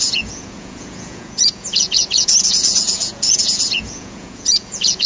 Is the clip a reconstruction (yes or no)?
yes